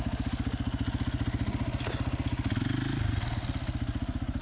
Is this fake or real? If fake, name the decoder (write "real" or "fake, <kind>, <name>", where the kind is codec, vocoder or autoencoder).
real